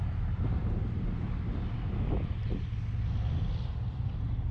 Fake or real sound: real